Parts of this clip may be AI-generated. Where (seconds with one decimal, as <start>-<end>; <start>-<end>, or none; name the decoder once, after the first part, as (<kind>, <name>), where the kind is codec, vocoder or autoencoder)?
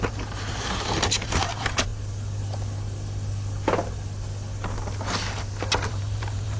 0.0-1.9 (vocoder, BigVGAN v2); 5.9-6.6